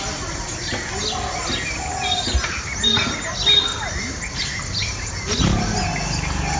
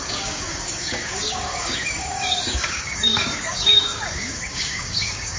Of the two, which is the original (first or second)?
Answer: first